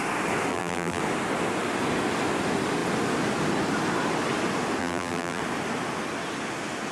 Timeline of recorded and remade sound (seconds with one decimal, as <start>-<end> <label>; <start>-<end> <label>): 0.0-0.5 recorded; 0.5-1.0 remade; 1.0-4.8 recorded; 4.8-5.4 remade; 5.4-6.9 recorded